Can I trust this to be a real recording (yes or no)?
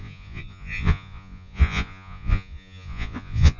no